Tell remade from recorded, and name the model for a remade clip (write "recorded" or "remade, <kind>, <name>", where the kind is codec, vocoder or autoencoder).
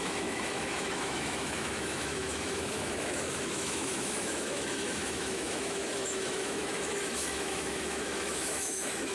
remade, autoencoder, DAC-VAE